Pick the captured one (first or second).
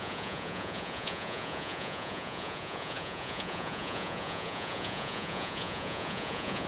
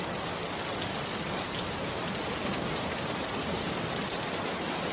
second